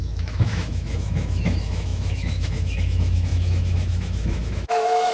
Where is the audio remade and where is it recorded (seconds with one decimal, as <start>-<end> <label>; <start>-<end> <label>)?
0.0-5.1 remade